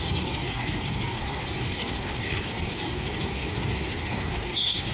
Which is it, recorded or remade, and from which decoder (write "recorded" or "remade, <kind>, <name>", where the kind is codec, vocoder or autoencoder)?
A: remade, codec, DAC